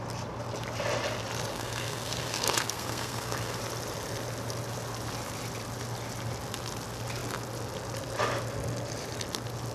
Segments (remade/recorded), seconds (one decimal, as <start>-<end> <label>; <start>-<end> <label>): 0.0-1.5 recorded; 1.5-3.6 remade; 3.6-9.7 recorded